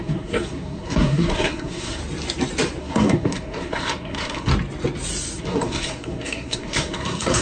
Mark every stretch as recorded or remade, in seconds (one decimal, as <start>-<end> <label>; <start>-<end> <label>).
0.0-2.0 remade; 2.0-2.8 recorded; 2.8-4.5 remade; 4.5-5.4 recorded; 5.4-7.4 remade